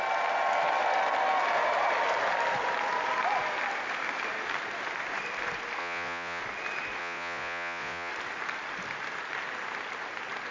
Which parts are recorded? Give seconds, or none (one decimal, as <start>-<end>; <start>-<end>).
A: 0.0-5.8; 6.4-7.0; 8.1-10.5